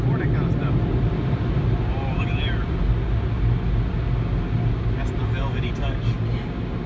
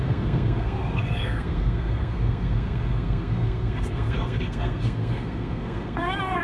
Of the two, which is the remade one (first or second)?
second